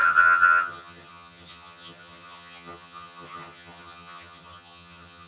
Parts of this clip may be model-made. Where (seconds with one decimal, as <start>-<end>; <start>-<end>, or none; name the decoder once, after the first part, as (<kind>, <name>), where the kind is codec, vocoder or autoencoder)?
0.0-5.3 (vocoder, HiFi-GAN)